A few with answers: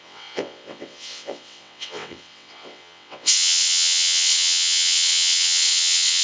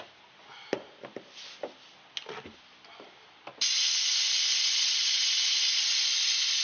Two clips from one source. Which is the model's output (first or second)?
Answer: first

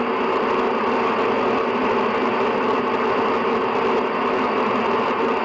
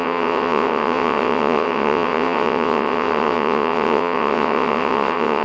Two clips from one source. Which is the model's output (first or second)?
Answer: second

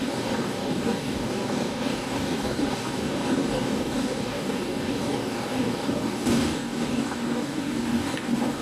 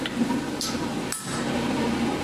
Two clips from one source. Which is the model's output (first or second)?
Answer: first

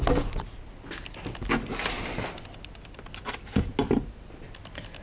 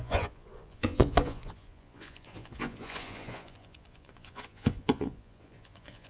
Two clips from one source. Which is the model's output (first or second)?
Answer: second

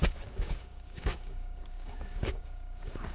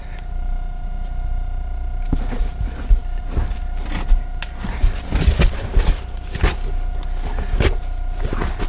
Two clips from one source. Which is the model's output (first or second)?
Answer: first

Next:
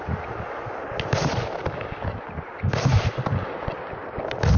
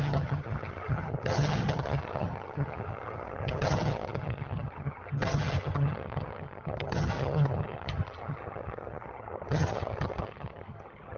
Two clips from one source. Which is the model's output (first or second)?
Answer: second